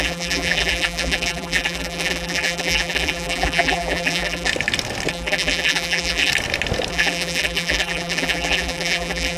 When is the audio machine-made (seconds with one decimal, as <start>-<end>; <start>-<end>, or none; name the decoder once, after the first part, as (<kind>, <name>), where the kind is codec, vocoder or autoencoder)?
0.0-4.5 (vocoder, BigVGAN v2); 5.1-6.3; 6.9-9.4